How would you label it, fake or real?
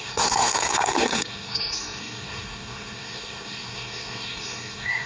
fake